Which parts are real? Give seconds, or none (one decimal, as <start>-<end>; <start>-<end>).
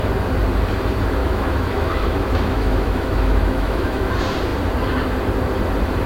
0.0-1.2; 4.1-6.1